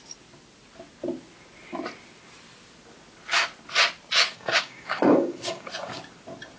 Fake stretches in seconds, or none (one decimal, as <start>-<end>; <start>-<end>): 4.3-6.0